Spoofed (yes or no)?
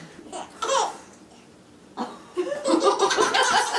no